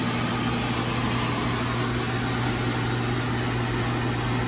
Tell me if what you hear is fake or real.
real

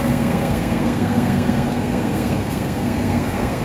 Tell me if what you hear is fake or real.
fake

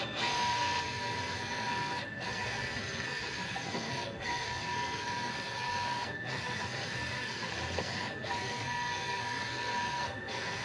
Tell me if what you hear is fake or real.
fake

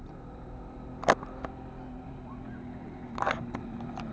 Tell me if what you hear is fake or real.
real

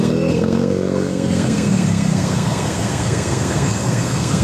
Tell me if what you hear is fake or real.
fake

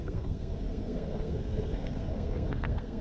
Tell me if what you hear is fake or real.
fake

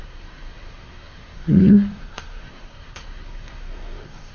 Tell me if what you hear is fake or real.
fake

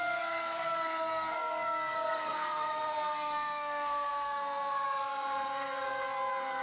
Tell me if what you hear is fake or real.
fake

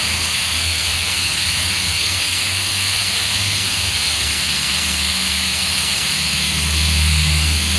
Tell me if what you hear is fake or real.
fake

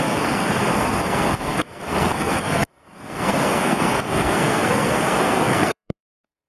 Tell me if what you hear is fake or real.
fake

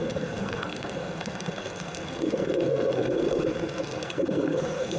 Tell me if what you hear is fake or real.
fake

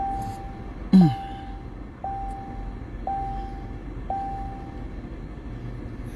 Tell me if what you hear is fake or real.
real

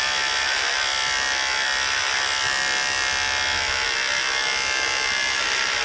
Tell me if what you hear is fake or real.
real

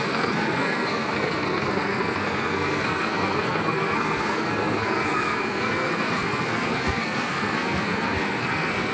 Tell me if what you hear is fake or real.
fake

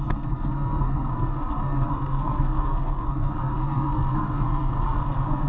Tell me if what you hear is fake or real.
fake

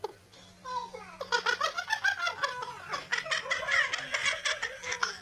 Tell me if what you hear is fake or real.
real